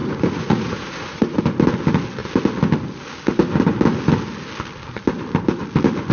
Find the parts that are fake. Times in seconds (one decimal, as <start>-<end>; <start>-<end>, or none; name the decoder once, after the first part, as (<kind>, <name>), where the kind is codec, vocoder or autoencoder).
0.0-1.4 (vocoder, Vocos)